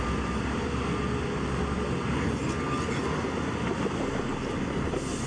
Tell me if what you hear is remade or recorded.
recorded